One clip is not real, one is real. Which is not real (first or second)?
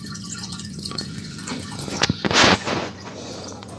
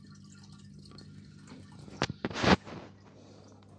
first